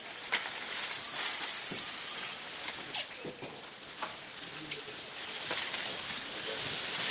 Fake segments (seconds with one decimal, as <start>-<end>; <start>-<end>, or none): 0.7-7.1